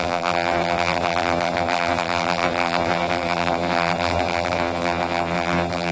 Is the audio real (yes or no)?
no